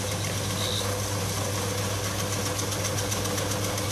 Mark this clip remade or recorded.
recorded